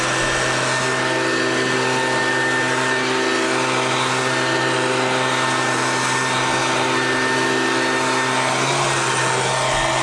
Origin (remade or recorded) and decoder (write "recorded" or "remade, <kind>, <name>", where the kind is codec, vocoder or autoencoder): recorded